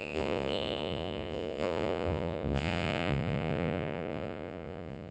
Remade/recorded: remade